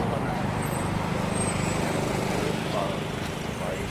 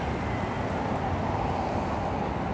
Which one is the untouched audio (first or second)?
second